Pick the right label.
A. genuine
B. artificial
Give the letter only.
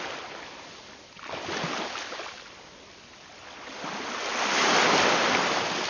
A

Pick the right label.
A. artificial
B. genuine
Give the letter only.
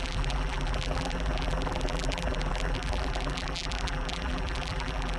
A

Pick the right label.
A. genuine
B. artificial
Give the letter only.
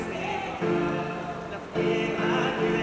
A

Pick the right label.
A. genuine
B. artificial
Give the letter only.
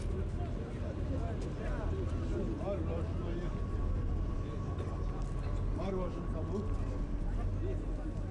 A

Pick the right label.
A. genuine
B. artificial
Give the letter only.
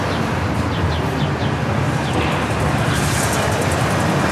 A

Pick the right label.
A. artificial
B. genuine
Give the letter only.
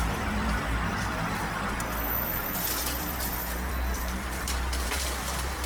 A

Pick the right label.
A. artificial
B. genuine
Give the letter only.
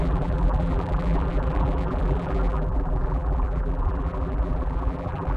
A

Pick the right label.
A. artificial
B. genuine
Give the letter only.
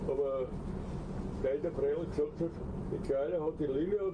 B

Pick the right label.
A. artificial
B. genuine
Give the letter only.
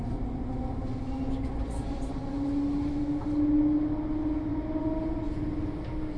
B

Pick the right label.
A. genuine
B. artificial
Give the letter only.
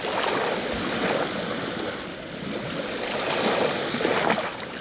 A